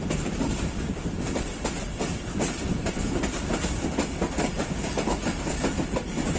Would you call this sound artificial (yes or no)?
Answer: no